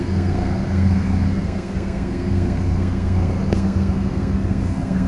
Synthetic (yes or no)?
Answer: yes